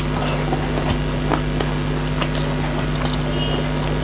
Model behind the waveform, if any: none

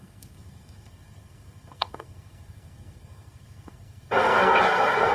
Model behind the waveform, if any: codec, SNAC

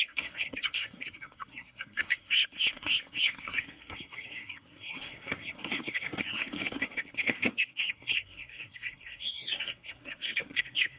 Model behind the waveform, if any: codec, SNAC